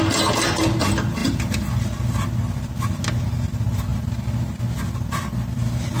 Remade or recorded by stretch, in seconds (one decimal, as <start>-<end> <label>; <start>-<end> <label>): 0.0-6.0 recorded